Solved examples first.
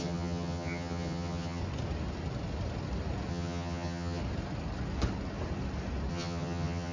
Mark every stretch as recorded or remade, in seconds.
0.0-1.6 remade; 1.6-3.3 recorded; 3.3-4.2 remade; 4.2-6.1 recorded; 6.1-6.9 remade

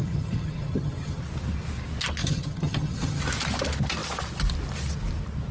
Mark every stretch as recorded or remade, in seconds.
0.0-1.2 remade; 1.2-2.2 recorded; 2.2-3.2 remade; 3.2-5.5 recorded

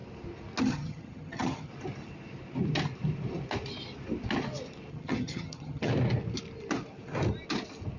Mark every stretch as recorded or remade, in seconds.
0.0-0.6 recorded; 0.6-1.7 remade; 1.7-4.9 recorded; 4.9-5.9 remade; 5.9-8.0 recorded

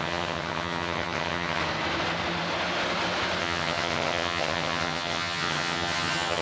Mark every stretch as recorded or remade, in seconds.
0.0-1.6 remade; 1.6-3.4 recorded; 3.4-6.4 remade

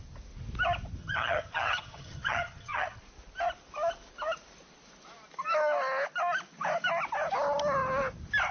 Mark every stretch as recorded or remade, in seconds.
0.0-1.0 recorded; 1.0-3.0 remade; 3.0-8.5 recorded